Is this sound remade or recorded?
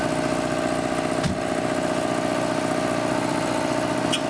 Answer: recorded